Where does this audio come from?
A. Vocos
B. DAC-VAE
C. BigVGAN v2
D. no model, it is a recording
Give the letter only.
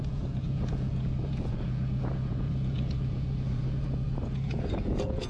A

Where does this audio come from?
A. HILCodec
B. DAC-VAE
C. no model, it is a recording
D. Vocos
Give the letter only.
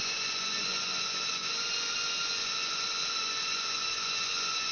D